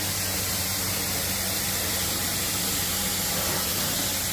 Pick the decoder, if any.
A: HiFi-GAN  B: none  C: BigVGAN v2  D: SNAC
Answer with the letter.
C